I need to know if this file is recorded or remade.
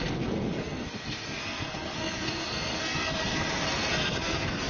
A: remade